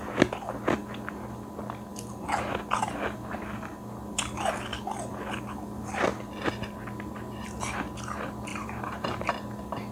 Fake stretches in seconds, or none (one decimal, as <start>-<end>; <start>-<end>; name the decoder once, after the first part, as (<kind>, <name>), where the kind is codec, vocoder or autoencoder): 8.5-9.3 (vocoder, BigVGAN v2)